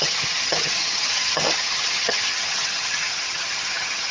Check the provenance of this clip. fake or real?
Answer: fake